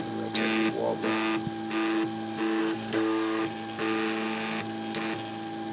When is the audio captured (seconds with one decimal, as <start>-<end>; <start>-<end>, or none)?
0.0-2.6; 3.4-5.7